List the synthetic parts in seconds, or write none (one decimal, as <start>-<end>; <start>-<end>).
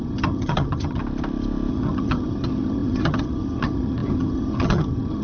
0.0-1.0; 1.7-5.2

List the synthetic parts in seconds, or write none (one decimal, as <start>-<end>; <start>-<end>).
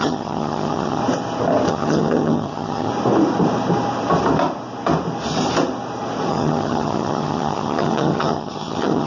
0.0-1.0; 1.7-2.9; 6.3-9.1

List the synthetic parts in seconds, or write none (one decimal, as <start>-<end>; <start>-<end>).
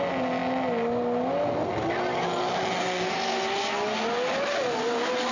none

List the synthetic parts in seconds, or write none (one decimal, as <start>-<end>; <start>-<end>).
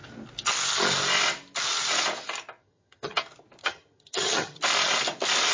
2.6-3.2; 3.6-4.6